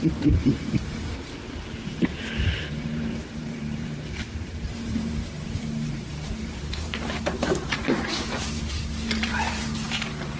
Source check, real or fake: fake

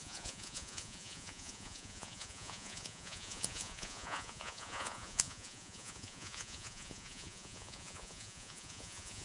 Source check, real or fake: fake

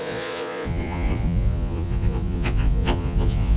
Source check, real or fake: fake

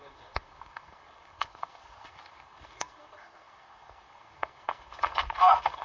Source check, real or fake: fake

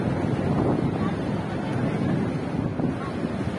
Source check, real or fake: real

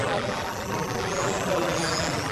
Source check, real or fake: fake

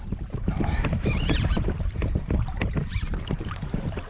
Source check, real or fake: fake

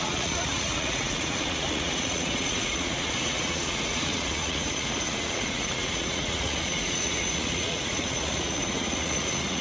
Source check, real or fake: fake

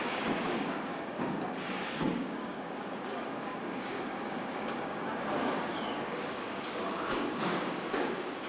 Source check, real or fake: fake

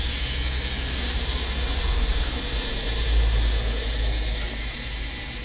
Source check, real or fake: real